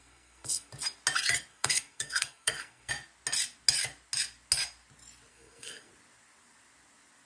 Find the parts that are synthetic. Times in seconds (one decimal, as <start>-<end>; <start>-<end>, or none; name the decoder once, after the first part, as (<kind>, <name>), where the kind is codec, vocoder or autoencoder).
0.0-0.7 (codec, SNAC); 1.5-2.9; 5.3-5.9